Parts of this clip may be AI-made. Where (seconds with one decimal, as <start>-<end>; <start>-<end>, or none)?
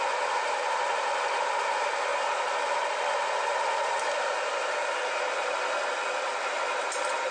none